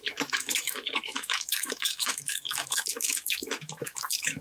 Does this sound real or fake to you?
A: fake